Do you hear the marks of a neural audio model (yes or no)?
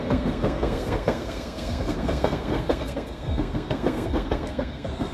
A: yes